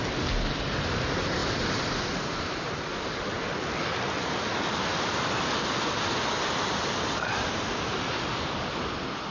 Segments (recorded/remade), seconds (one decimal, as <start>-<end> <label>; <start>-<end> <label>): 0.0-9.3 recorded